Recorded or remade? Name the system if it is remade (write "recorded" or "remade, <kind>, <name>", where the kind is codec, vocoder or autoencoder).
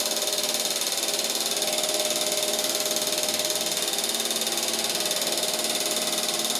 recorded